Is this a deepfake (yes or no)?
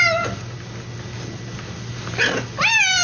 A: no